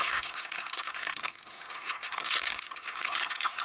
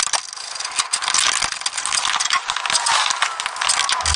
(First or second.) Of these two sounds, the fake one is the first